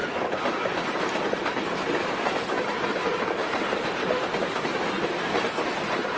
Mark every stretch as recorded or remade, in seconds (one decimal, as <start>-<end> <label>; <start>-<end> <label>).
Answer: 0.0-3.4 remade; 3.4-4.6 recorded; 4.6-6.2 remade